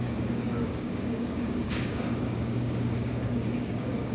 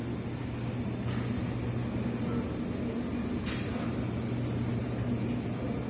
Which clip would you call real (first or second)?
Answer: second